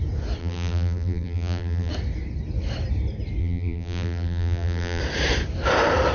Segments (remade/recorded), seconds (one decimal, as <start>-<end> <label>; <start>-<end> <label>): 0.0-0.4 recorded; 0.4-1.9 remade; 1.9-3.4 recorded; 3.4-5.0 remade; 5.0-6.1 recorded